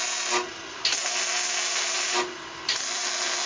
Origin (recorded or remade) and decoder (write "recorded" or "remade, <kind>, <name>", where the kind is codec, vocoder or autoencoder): recorded